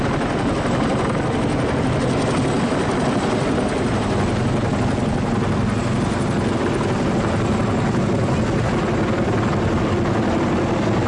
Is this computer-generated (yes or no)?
no